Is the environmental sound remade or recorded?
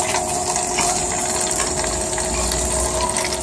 recorded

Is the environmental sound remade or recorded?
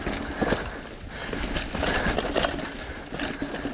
recorded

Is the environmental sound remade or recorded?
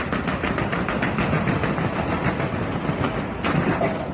recorded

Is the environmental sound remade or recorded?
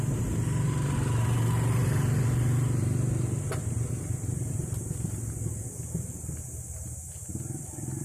recorded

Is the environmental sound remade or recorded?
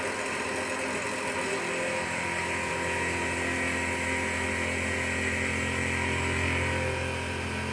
recorded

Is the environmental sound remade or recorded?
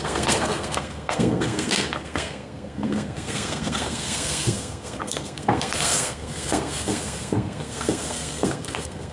remade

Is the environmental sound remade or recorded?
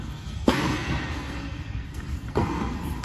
remade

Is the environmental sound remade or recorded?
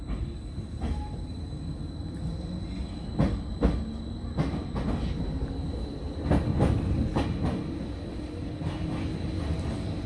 recorded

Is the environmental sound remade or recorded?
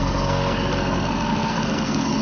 remade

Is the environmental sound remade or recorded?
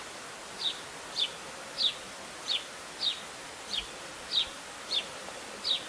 recorded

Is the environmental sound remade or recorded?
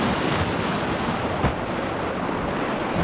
recorded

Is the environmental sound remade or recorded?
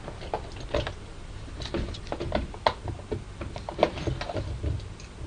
recorded